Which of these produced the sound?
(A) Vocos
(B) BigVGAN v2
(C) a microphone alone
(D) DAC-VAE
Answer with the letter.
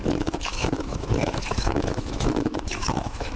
D